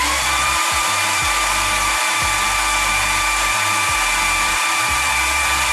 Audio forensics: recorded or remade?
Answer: remade